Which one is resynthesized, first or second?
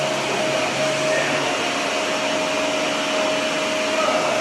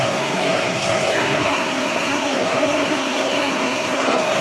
second